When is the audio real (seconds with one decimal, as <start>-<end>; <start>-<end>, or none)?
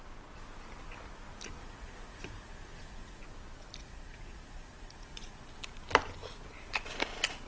0.0-1.6; 3.2-3.8; 5.4-7.5